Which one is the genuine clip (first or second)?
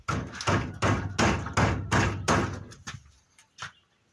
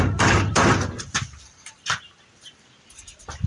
first